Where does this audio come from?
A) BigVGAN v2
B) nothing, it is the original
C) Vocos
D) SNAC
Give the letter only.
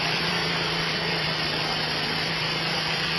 A